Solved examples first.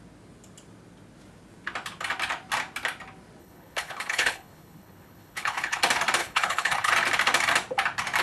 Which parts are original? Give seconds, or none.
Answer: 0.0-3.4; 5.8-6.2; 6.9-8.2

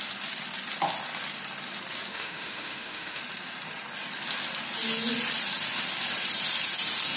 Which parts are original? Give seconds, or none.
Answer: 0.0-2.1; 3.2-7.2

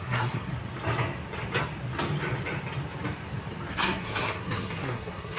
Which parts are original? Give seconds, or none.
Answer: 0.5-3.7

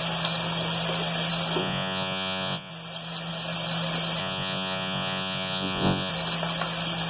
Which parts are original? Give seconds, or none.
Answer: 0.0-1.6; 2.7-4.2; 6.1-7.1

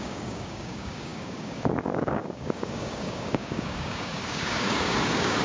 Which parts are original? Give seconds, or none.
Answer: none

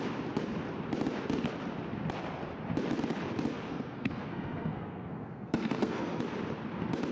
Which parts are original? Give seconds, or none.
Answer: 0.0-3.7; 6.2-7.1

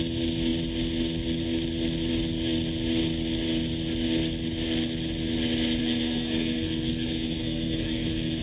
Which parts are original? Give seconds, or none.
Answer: 0.0-5.8

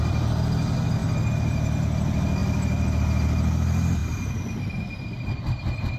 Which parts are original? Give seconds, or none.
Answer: 1.0-1.8; 2.4-3.0